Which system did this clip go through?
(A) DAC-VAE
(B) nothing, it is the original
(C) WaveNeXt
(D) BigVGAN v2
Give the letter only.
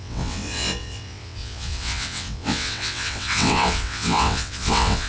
C